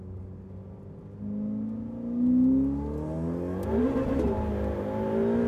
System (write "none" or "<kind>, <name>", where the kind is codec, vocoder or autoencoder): none